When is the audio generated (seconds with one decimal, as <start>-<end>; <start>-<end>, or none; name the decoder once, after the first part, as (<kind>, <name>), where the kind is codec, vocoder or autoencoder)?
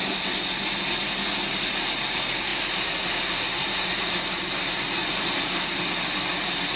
none